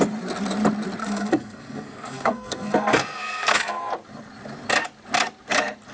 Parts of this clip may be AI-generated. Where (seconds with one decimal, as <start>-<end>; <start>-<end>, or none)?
1.0-3.9